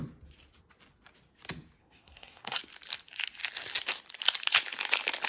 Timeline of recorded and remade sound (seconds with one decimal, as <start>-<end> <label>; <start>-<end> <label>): 0.0-1.8 recorded; 1.8-2.6 remade; 2.6-5.3 recorded